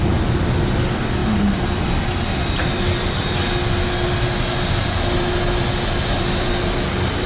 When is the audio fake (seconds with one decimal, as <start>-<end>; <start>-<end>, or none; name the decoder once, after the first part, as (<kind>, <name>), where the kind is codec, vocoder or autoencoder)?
none